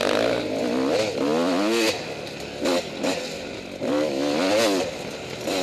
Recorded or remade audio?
recorded